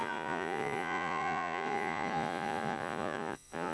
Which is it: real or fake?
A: fake